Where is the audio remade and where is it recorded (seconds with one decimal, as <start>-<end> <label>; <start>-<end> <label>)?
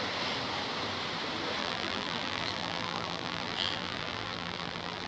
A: 0.0-1.6 recorded; 1.6-5.1 remade